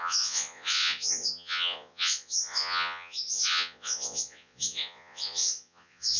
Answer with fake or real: fake